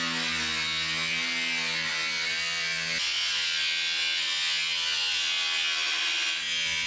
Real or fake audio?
real